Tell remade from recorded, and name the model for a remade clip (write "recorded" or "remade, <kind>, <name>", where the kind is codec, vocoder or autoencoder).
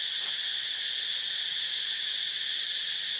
recorded